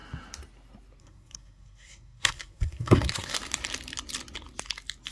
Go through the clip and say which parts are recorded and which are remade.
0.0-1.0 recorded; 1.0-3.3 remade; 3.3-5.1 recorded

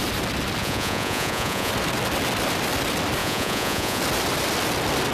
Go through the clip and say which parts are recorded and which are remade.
0.0-0.6 recorded; 0.6-1.7 remade; 1.7-3.2 recorded; 3.2-4.0 remade; 4.0-5.1 recorded

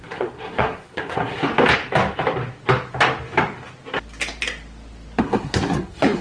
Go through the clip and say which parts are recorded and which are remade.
0.0-1.5 remade; 1.5-5.2 recorded; 5.2-6.2 remade

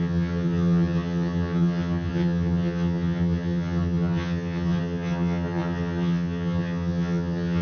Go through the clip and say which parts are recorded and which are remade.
0.0-7.6 remade

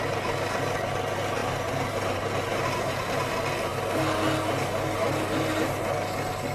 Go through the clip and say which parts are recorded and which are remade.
0.0-1.4 recorded; 1.4-3.3 remade; 3.3-6.5 recorded

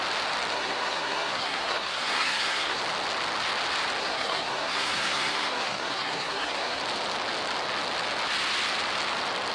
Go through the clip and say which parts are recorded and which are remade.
0.0-0.5 recorded; 0.5-2.8 remade; 2.8-4.0 recorded; 4.0-6.8 remade; 6.8-9.5 recorded